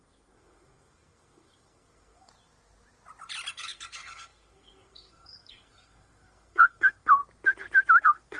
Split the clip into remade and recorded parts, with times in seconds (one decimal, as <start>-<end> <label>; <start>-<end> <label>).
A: 0.0-2.3 remade; 2.3-3.5 recorded; 3.5-7.2 remade; 7.2-8.0 recorded; 8.0-8.4 remade